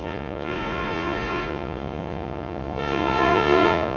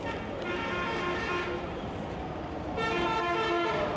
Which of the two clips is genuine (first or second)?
second